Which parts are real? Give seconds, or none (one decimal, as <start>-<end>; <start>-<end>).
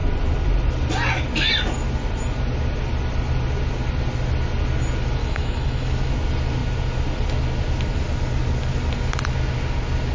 0.0-5.2; 6.1-10.1